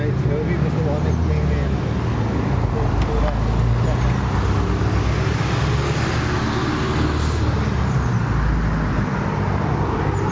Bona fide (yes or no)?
yes